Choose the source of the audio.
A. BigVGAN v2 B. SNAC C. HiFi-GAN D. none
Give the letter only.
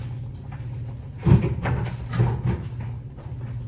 D